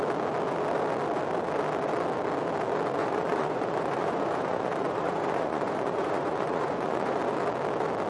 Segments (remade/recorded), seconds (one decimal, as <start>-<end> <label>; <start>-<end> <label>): 0.0-3.0 recorded; 3.0-7.2 remade; 7.2-8.1 recorded